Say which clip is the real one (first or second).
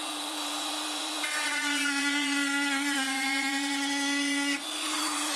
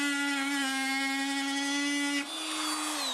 second